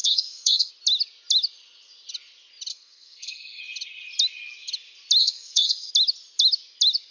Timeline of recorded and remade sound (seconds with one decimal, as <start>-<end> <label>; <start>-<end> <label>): 0.0-0.7 remade; 0.7-2.7 recorded; 2.7-3.6 remade; 3.6-5.2 recorded; 5.2-5.9 remade; 5.9-7.1 recorded